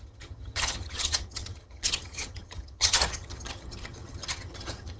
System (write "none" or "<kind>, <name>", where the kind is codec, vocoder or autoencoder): vocoder, HiFi-GAN